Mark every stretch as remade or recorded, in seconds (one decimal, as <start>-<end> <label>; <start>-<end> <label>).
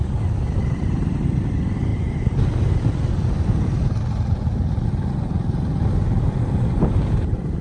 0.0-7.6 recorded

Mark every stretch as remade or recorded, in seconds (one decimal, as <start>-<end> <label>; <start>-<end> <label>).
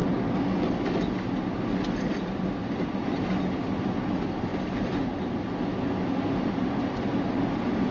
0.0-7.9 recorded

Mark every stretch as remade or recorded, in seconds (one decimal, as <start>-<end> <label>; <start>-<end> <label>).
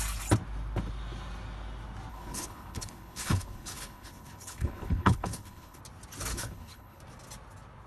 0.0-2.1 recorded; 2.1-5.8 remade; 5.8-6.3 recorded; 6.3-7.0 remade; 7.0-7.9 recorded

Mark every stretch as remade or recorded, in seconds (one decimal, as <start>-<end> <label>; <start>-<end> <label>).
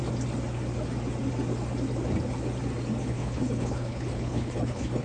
0.0-3.0 recorded; 3.0-5.0 remade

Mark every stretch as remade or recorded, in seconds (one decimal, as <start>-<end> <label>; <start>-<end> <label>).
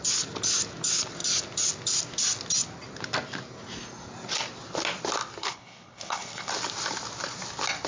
0.0-5.4 recorded; 5.4-6.5 remade; 6.5-7.9 recorded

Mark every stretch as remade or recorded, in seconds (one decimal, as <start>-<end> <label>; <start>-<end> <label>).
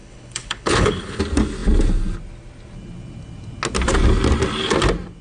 0.0-1.2 remade; 1.2-5.2 recorded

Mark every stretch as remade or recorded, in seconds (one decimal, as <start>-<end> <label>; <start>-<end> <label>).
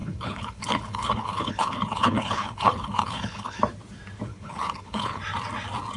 0.0-3.6 remade; 3.6-4.3 recorded; 4.3-5.2 remade; 5.2-6.0 recorded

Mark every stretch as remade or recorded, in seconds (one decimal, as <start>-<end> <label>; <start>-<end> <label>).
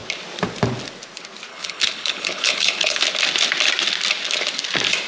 0.0-1.5 recorded; 1.5-3.0 remade; 3.0-5.1 recorded